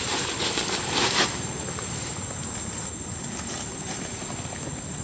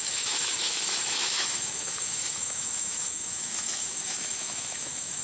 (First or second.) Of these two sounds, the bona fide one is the first